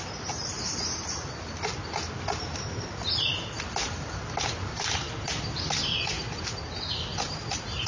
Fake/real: real